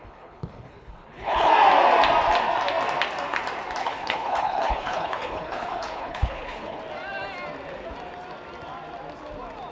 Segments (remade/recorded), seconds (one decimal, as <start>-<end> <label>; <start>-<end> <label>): 0.0-1.5 remade; 1.5-3.8 recorded; 3.8-6.8 remade; 6.8-9.7 recorded